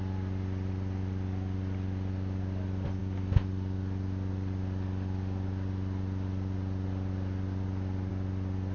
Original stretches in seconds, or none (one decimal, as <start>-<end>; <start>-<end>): 0.0-8.7